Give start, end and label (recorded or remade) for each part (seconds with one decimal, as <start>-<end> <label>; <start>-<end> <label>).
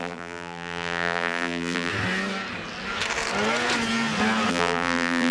0.0-1.9 remade; 1.9-4.5 recorded; 4.5-5.3 remade